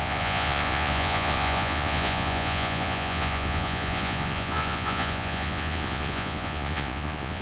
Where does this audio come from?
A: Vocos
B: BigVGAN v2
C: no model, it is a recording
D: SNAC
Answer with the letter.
A